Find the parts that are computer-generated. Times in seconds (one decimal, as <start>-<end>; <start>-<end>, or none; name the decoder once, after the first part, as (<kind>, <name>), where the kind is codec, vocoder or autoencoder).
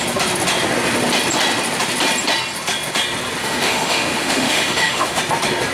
3.4-5.2 (autoencoder, DAC-VAE)